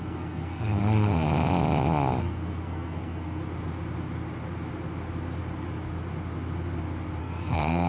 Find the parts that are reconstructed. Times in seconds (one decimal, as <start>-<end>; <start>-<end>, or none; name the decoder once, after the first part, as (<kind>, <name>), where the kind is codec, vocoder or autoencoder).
0.0-0.8 (codec, SNAC); 2.2-3.4; 7.2-7.9